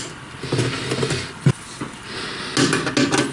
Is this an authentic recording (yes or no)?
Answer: yes